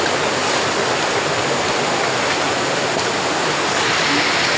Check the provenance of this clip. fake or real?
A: real